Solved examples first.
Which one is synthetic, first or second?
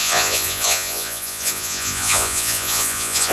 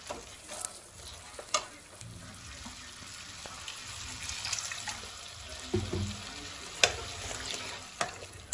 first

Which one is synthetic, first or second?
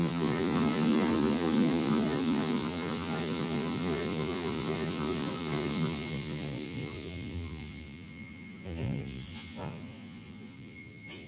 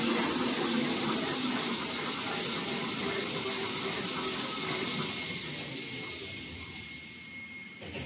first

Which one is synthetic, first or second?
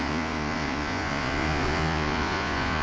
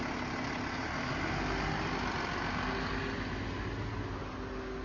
first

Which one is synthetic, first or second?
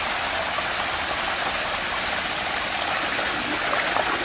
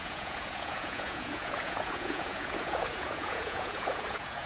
second